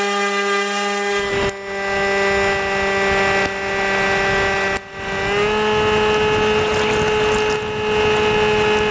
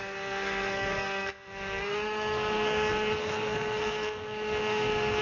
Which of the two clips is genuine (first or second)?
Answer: first